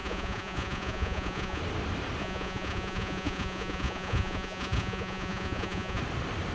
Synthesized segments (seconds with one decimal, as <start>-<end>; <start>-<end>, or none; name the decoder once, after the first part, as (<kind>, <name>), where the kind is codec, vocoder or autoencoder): 0.0-1.6 (vocoder, Vocos); 2.2-6.0